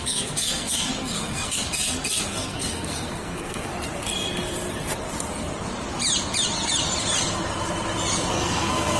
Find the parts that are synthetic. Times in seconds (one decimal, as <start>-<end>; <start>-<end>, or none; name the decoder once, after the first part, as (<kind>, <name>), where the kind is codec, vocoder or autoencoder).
0.0-3.7 (codec, SNAC); 8.3-9.0